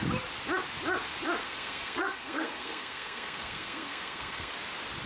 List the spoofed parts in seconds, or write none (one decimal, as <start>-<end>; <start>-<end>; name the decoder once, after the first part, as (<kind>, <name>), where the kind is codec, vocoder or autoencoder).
1.4-4.5 (codec, SNAC)